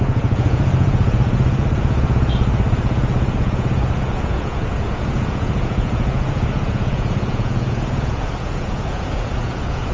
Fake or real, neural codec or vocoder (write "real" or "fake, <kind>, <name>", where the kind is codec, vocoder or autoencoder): fake, vocoder, Vocos